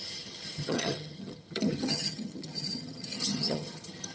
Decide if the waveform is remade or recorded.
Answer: remade